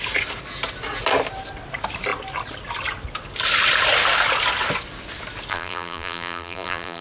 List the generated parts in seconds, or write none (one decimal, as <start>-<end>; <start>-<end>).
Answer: 5.5-7.0